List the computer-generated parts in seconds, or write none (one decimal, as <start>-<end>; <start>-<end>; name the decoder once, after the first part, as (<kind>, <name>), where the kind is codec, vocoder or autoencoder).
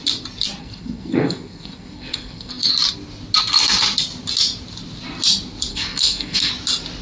0.6-2.7 (codec, SNAC); 5.7-6.5